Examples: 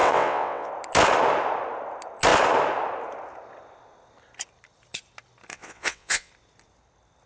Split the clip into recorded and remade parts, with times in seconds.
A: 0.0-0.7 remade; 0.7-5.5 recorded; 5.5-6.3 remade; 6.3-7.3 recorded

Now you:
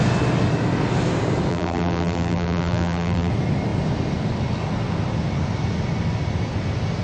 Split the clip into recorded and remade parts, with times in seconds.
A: 0.0-1.5 recorded; 1.5-3.3 remade; 3.3-7.0 recorded

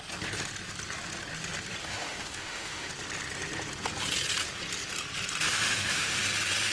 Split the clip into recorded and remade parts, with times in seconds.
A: 0.0-1.8 recorded; 1.8-2.9 remade; 2.9-5.5 recorded; 5.5-6.2 remade; 6.2-6.7 recorded

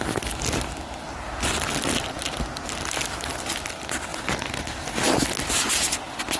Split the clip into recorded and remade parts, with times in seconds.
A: 0.0-6.4 recorded

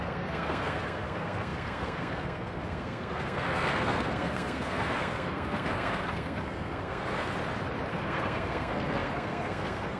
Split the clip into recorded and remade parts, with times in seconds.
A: 0.0-7.3 remade; 7.3-7.9 recorded; 7.9-10.0 remade

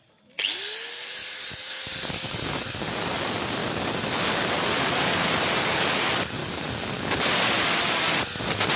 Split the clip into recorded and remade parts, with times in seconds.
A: 0.0-1.2 remade; 1.2-3.1 recorded; 3.1-6.4 remade; 6.4-8.4 recorded; 8.4-8.8 remade

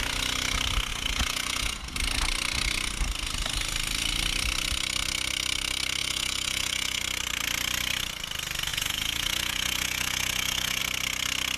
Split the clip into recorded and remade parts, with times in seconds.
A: 0.0-0.9 recorded; 0.9-1.8 remade; 1.8-6.0 recorded; 6.0-7.0 remade; 7.0-8.7 recorded; 8.7-10.8 remade; 10.8-11.6 recorded